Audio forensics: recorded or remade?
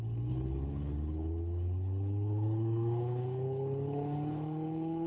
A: remade